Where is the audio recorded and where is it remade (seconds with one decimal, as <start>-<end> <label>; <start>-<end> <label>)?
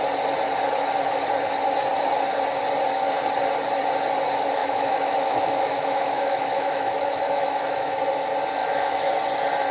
0.0-4.6 recorded; 4.6-8.0 remade; 8.0-8.6 recorded; 8.6-9.1 remade; 9.1-9.7 recorded